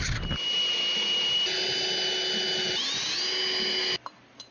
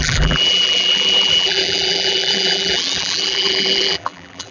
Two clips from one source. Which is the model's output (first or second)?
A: second